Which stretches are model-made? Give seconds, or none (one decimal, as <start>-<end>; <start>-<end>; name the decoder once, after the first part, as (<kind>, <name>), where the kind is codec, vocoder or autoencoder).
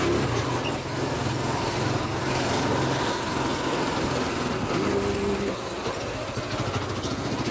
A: none